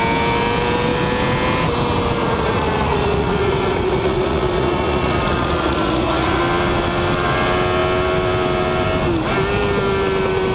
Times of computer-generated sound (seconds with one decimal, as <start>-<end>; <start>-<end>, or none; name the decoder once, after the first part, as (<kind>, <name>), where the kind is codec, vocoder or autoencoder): 2.2-6.4 (vocoder, Vocos)